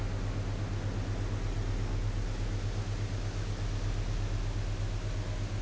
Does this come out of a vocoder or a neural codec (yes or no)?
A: no